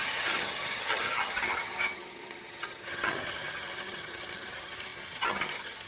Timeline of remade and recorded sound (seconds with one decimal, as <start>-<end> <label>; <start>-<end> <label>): 0.0-5.9 remade